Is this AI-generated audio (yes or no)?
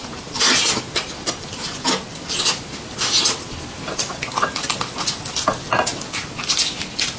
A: no